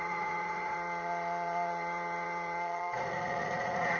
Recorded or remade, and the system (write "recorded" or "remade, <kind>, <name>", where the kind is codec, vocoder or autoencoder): remade, vocoder, Vocos